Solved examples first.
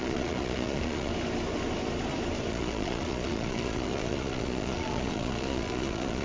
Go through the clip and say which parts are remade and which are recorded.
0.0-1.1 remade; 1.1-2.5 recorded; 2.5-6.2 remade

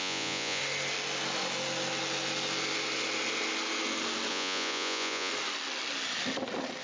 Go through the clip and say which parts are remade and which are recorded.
0.0-0.6 remade; 0.6-4.3 recorded; 4.3-5.3 remade; 5.3-6.8 recorded